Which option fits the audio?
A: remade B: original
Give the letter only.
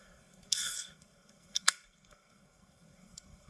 A